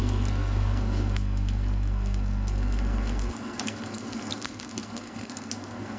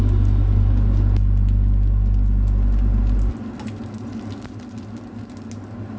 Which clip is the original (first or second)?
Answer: second